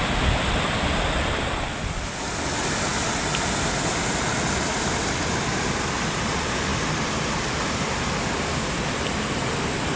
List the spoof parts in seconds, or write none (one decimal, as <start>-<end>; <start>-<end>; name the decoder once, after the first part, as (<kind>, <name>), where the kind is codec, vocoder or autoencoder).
none